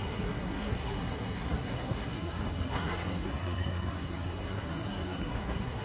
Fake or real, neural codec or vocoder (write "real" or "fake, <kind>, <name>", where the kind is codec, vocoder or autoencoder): fake, codec, SNAC